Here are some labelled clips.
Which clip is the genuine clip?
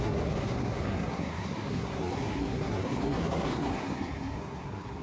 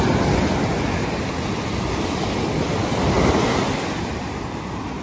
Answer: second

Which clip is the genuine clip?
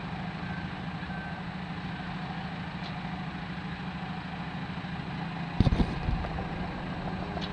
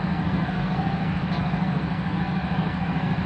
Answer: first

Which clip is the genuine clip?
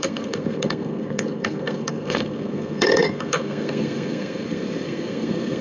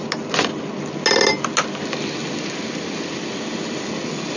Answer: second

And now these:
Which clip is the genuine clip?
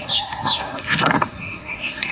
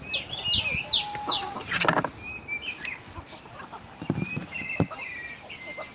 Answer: second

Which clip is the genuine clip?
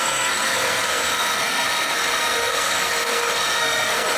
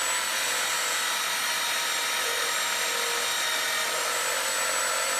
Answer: second